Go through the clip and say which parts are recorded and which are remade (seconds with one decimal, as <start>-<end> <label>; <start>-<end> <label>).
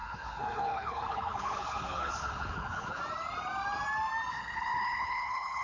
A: 0.0-3.0 remade; 3.0-4.3 recorded; 4.3-5.6 remade